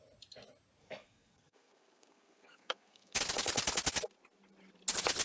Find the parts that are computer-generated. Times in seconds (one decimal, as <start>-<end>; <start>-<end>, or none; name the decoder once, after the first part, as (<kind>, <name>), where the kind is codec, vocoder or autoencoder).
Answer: 0.8-3.2 (codec, SNAC)